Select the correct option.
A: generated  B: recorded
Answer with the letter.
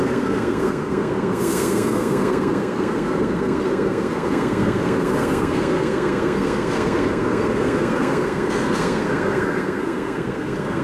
A